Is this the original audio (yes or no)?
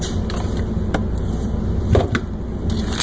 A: yes